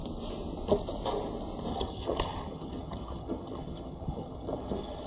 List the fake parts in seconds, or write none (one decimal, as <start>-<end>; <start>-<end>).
1.7-5.1